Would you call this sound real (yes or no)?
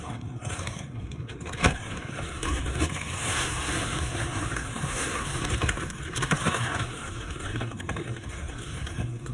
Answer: no